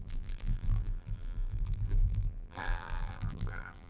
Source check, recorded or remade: remade